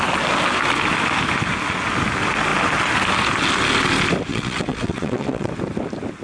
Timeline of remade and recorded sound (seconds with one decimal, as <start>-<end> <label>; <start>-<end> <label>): 0.0-4.3 recorded; 4.3-5.5 remade; 5.5-6.2 recorded